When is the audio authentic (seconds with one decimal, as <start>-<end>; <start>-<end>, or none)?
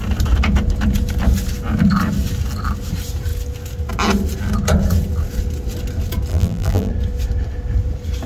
0.0-6.3; 6.9-8.3